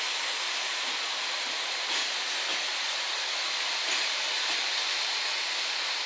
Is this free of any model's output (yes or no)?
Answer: yes